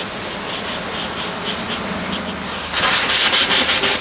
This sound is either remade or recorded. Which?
recorded